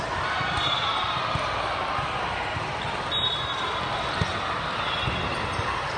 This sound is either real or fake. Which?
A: real